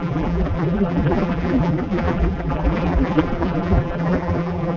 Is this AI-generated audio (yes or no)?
yes